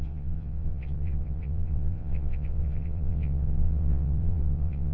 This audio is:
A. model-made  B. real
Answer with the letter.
A